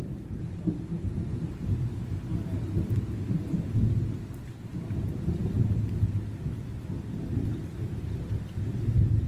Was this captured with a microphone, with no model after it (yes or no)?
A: yes